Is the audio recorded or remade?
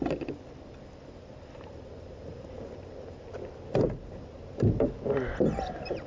recorded